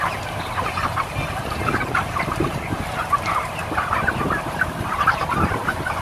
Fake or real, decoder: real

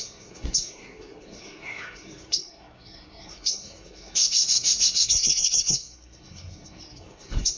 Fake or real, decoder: fake, codec, SNAC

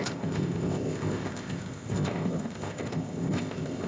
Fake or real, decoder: fake, codec, ZipCodec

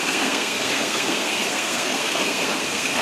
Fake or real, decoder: fake, codec, SNAC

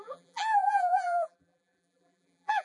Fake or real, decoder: fake, vocoder, BigVGAN v2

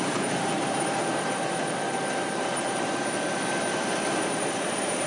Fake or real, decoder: fake, vocoder, BigVGAN v2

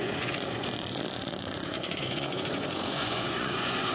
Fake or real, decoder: fake, vocoder, Vocos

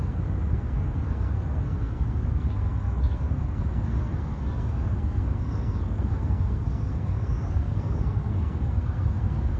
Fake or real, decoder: fake, codec, SNAC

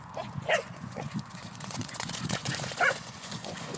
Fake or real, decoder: fake, vocoder, Vocos